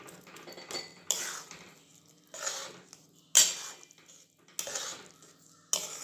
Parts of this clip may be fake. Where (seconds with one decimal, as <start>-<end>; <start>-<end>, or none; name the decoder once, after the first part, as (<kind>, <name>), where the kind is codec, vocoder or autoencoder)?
none